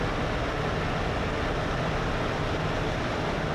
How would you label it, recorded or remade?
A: recorded